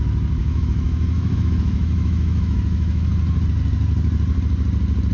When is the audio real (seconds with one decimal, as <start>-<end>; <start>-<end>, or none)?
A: 0.0-0.4; 3.1-5.1